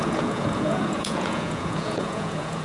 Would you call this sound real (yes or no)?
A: no